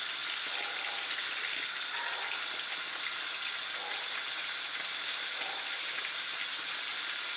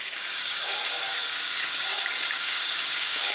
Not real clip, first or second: second